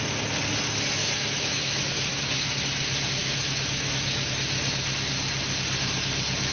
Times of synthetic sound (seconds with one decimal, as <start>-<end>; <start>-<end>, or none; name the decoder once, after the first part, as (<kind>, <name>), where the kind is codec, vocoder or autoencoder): 1.0-2.5 (autoencoder, DAC-VAE); 3.2-4.3